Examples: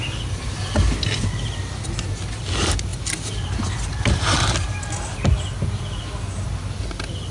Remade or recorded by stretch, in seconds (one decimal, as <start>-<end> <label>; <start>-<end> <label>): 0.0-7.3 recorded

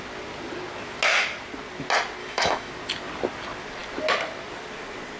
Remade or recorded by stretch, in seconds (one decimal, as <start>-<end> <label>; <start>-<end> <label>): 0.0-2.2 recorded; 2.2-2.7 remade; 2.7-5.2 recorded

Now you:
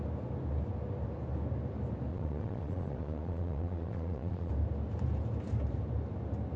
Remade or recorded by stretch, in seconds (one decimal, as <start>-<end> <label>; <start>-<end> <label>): 0.0-2.1 recorded; 2.1-4.5 remade; 4.5-6.6 recorded

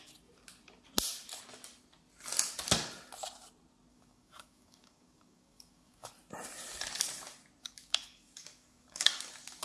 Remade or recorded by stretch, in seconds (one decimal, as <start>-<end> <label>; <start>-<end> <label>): 0.0-3.9 recorded; 3.9-6.1 remade; 6.1-7.6 recorded; 7.6-9.1 remade; 9.1-9.6 recorded

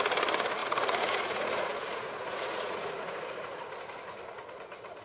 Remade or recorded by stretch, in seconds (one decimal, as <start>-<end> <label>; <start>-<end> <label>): 0.0-0.6 recorded; 0.6-3.6 remade; 3.6-5.0 recorded

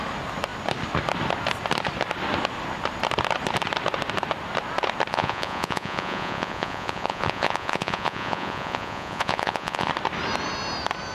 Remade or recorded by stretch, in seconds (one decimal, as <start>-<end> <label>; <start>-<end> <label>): 0.0-5.1 recorded; 5.1-9.9 remade; 9.9-11.1 recorded

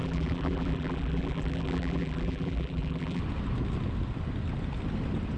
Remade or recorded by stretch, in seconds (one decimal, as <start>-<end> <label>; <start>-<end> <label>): 0.0-3.2 remade; 3.2-5.4 recorded